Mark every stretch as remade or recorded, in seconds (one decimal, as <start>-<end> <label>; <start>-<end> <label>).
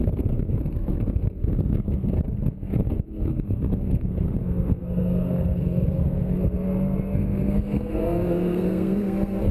0.0-9.5 remade